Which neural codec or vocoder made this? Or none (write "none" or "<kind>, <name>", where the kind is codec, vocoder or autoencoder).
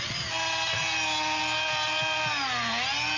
none